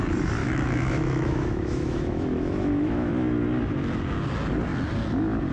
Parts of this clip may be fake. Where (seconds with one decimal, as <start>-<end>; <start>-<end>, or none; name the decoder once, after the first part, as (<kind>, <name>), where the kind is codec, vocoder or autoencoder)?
0.4-3.1 (autoencoder, DAC-VAE)